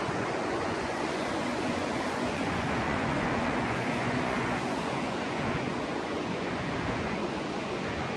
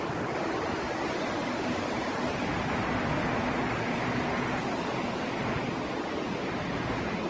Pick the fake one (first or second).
first